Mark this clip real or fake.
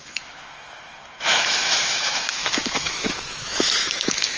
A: fake